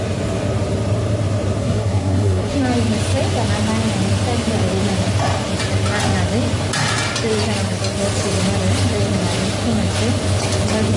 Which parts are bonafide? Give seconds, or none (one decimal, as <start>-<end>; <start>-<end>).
0.0-1.6; 2.6-11.0